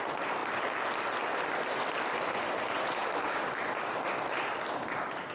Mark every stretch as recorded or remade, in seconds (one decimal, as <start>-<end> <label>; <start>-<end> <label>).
0.0-0.4 remade; 0.4-1.7 recorded; 1.7-5.3 remade